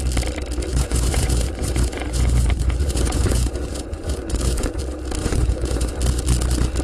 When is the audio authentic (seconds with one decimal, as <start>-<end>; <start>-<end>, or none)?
0.0-0.7; 4.8-5.2; 5.9-6.8